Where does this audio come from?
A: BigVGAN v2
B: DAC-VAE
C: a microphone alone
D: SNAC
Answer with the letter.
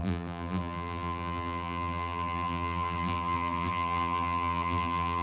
A